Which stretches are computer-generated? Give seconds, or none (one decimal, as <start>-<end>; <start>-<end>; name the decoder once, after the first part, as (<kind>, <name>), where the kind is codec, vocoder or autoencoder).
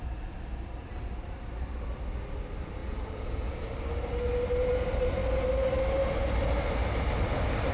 2.8-3.7 (vocoder, Vocos)